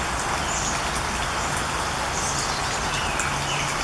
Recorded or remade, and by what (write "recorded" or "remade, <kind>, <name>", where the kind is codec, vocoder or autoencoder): recorded